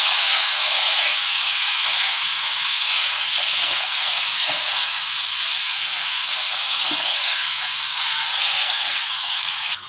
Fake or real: fake